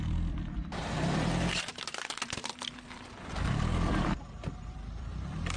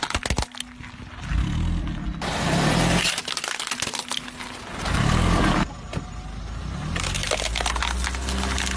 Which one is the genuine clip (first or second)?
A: second